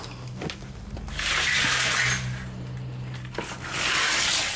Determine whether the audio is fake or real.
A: real